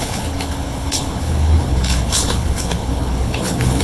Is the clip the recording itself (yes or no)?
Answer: no